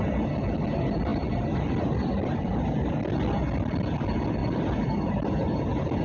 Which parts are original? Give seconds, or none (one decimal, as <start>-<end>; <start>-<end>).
0.0-1.1; 2.9-4.4; 5.3-6.0